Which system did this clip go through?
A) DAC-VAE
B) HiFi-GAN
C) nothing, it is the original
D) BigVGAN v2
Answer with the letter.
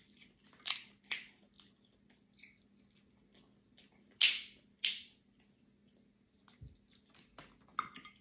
C